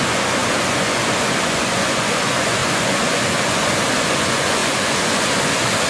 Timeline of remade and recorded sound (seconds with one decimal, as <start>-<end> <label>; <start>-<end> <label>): 0.0-5.9 remade